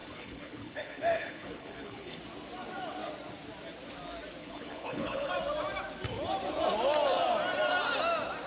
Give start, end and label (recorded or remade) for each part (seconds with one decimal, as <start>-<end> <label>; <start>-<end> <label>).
0.0-2.2 remade; 2.2-4.4 recorded; 4.4-5.3 remade; 5.3-8.5 recorded

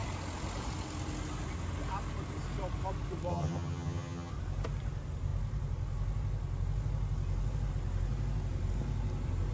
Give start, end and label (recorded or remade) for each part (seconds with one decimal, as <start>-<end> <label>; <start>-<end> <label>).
0.0-3.3 recorded; 3.3-4.3 remade; 4.3-9.5 recorded

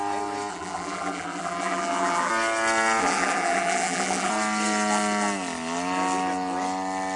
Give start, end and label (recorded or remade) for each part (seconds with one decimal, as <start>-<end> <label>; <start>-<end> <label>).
0.0-0.5 recorded; 0.5-2.3 remade; 2.3-3.0 recorded; 3.0-4.3 remade; 4.3-7.2 recorded

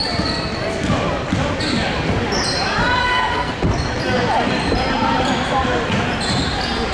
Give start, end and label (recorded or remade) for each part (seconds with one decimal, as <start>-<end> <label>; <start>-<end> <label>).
0.0-3.0 recorded; 3.0-3.5 remade; 3.5-6.9 recorded

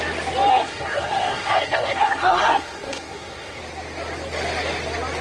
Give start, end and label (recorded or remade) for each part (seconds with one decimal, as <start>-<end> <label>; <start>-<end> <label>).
0.0-0.5 recorded; 0.5-3.6 remade; 3.6-5.2 recorded

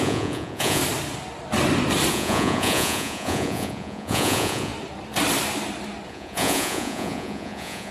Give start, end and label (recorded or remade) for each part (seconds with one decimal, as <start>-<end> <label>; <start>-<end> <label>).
0.0-0.8 remade; 0.8-2.1 recorded; 2.1-4.7 remade; 4.7-6.1 recorded; 6.1-7.9 remade

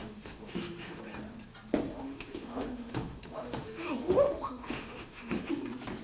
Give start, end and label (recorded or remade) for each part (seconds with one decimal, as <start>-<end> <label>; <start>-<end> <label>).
0.0-1.0 remade; 1.0-1.9 recorded; 1.9-5.5 remade; 5.5-6.0 recorded